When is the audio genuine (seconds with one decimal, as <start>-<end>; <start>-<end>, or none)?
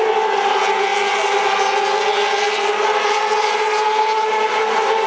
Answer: 0.0-5.1